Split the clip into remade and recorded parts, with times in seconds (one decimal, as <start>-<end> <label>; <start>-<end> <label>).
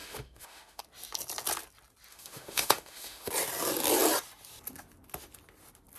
0.0-0.8 remade; 0.8-2.1 recorded; 2.1-3.3 remade; 3.3-6.0 recorded